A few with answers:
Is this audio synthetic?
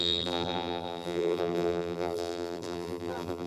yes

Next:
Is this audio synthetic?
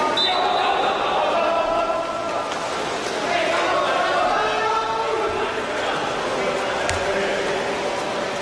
no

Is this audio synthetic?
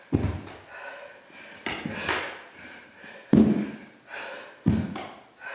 no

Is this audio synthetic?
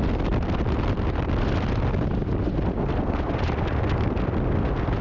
no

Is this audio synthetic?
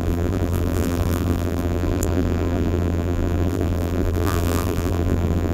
yes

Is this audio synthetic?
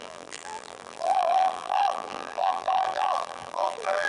yes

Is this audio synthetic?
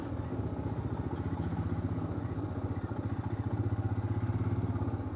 no